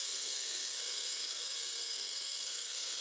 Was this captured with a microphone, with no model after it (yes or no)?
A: no